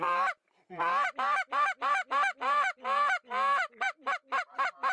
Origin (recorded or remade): remade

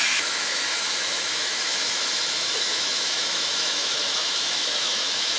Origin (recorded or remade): remade